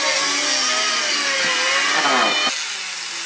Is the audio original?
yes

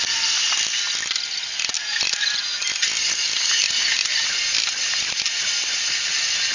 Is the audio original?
yes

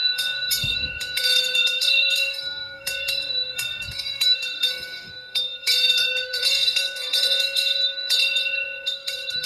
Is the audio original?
no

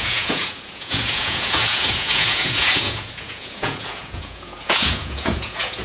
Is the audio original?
no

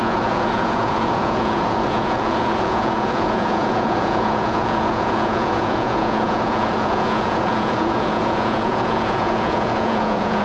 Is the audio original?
no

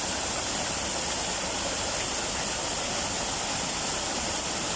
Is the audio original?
yes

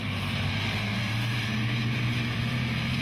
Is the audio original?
no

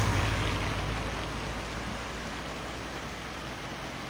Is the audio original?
yes